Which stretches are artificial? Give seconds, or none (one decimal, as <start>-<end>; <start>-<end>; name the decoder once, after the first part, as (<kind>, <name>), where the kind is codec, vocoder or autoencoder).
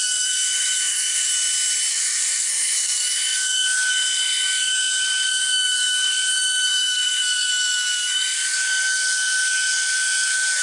0.0-1.3 (codec, SNAC); 1.9-10.6